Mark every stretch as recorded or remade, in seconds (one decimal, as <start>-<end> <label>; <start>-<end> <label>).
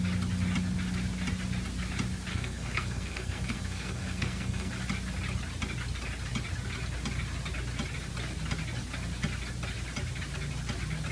0.0-2.3 recorded; 2.3-4.7 remade; 4.7-11.1 recorded